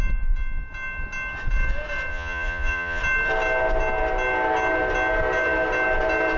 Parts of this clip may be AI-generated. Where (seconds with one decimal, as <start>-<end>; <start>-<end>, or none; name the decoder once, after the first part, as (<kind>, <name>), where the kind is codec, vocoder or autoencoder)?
2.1-3.0 (vocoder, Vocos)